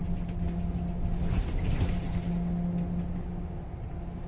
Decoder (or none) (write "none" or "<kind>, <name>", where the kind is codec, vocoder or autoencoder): none